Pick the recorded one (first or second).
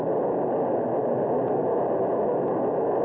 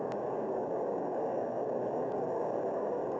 first